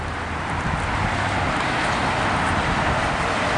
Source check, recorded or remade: recorded